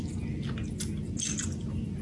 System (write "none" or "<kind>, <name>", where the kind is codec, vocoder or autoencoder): none